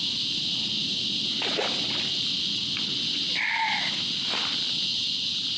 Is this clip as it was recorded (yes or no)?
yes